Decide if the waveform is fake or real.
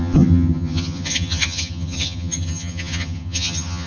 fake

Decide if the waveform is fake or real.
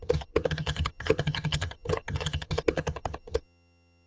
fake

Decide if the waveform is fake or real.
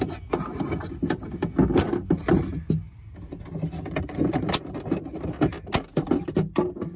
real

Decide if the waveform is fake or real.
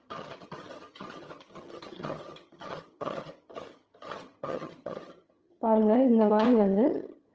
fake